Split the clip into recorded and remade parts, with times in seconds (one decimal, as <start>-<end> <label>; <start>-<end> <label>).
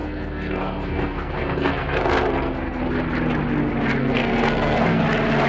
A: 0.0-2.8 remade; 2.8-4.0 recorded; 4.0-5.0 remade; 5.0-5.5 recorded